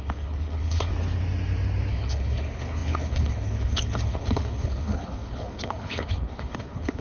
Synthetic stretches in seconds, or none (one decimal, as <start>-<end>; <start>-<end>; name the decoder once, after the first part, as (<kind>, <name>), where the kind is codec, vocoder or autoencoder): 0.0-0.9 (codec, HILCodec); 1.9-7.0